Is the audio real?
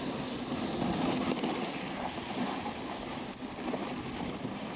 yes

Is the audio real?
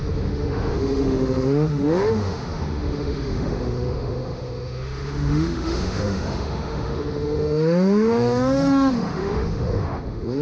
no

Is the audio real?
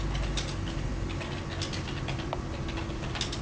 yes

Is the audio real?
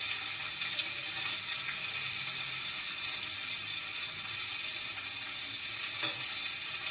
yes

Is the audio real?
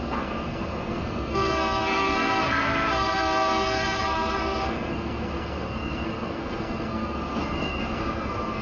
no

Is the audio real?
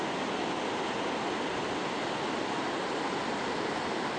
yes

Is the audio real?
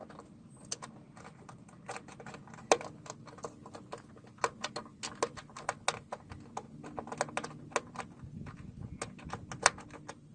yes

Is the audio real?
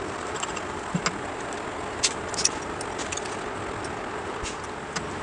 yes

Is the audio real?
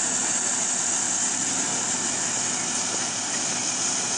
yes